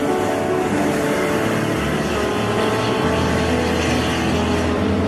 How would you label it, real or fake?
real